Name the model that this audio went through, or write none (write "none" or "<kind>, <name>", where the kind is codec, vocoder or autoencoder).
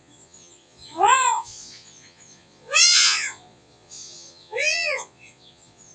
vocoder, Vocos